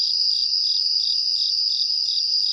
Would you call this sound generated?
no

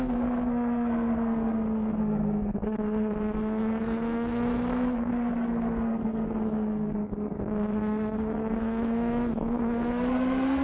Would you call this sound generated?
yes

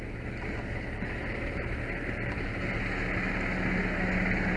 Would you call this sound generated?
no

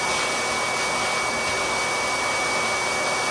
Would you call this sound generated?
no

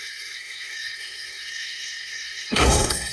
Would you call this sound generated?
yes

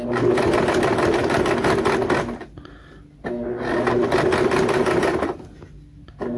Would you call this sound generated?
no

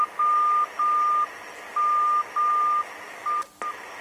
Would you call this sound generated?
no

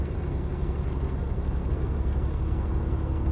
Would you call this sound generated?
yes